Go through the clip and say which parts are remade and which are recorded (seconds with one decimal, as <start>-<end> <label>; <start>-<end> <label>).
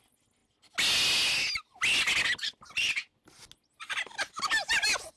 0.0-5.2 recorded